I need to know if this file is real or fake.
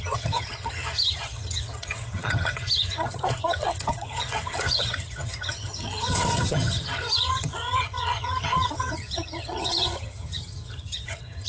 fake